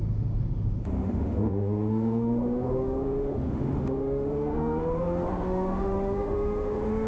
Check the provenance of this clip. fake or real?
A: fake